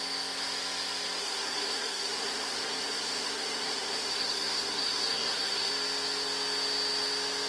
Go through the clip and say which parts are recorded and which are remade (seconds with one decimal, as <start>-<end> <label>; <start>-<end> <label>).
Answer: 0.0-1.2 recorded; 1.2-5.7 remade; 5.7-7.5 recorded